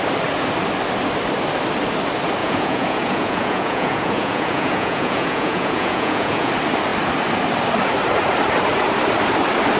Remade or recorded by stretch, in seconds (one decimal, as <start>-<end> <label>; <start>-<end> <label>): 0.0-2.4 recorded; 2.4-6.5 remade; 6.5-9.8 recorded